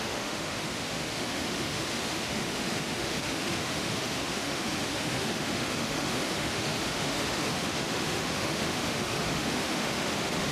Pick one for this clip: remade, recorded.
remade